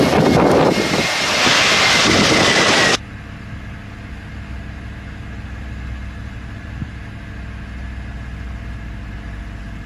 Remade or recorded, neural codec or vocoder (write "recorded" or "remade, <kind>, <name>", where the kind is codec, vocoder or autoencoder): recorded